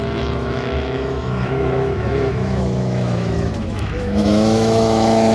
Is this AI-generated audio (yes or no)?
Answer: yes